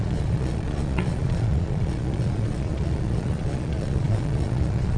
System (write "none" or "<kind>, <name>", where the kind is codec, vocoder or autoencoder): vocoder, Vocos